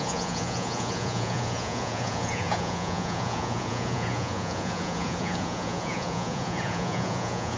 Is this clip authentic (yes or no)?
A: no